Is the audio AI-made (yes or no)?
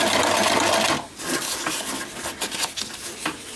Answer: no